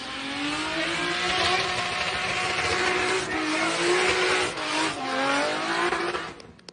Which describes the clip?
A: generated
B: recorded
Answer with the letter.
B